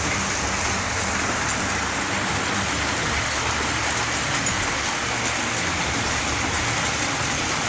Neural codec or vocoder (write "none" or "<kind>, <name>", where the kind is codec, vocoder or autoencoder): none